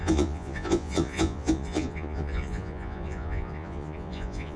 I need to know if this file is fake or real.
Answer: fake